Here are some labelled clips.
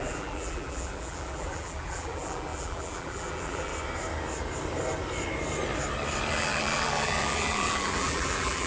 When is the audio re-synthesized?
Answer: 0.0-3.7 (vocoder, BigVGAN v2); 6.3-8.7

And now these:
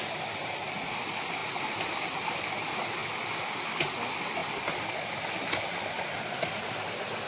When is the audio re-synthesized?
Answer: none